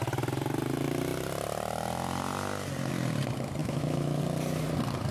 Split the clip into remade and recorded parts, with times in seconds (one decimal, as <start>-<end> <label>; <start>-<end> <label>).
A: 0.0-3.6 recorded; 3.6-4.2 remade; 4.2-5.1 recorded